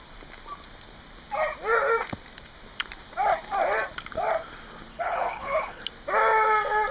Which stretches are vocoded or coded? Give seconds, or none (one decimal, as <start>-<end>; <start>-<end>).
4.9-5.8